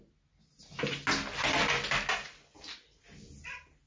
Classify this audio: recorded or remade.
recorded